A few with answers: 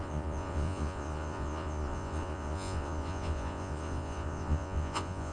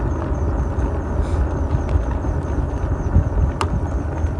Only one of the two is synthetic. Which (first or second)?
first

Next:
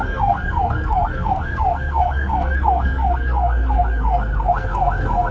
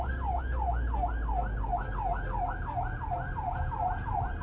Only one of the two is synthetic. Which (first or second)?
first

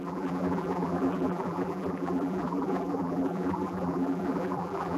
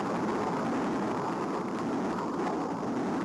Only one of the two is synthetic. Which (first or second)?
first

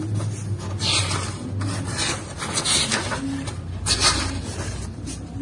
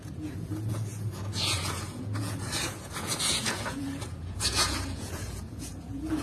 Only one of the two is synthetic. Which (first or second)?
second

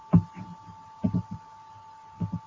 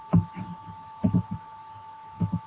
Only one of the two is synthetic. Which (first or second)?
second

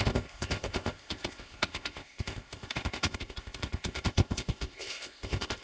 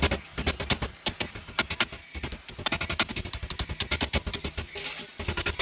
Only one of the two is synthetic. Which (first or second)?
first